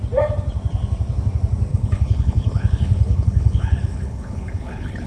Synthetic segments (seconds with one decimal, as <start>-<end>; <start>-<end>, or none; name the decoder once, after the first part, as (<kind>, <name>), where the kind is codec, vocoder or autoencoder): 1.7-5.1 (codec, HILCodec)